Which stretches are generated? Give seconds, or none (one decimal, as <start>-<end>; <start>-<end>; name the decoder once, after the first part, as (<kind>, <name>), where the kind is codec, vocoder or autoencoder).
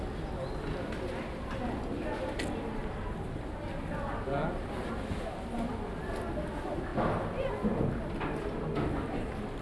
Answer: none